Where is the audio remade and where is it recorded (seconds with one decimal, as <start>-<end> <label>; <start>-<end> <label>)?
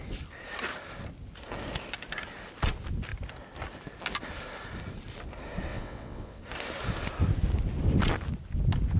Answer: 0.0-5.7 recorded; 5.7-6.4 remade; 6.4-9.0 recorded